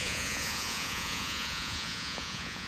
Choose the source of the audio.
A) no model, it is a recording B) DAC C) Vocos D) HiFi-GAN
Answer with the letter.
C